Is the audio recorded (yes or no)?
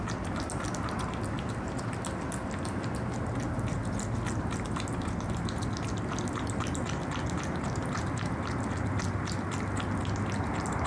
yes